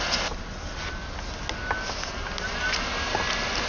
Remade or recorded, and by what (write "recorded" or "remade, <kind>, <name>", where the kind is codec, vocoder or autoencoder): recorded